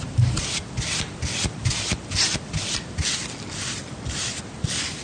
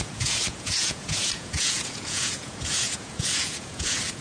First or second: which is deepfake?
second